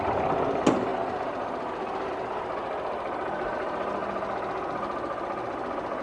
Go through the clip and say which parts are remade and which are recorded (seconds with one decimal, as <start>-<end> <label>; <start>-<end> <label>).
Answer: 0.0-6.0 recorded